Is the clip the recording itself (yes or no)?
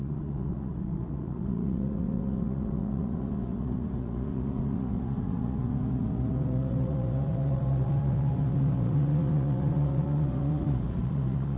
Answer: no